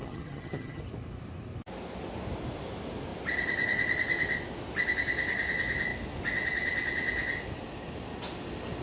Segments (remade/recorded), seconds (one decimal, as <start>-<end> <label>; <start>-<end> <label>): 0.0-0.8 remade; 0.8-8.8 recorded